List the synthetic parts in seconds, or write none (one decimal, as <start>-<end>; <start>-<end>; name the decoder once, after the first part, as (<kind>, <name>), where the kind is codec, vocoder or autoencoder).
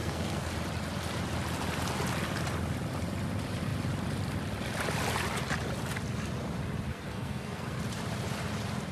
0.0-0.5 (codec, SNAC); 6.9-7.8